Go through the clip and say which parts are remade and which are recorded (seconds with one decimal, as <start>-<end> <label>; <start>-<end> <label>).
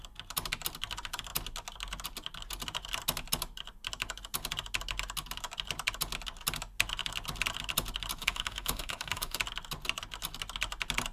0.0-8.2 recorded; 8.2-9.4 remade; 9.4-11.1 recorded